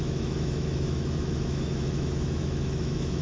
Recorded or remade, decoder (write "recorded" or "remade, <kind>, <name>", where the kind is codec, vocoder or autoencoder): remade, autoencoder, DAC-VAE